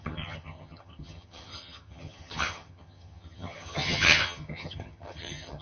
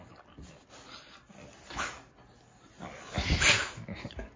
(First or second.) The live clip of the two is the second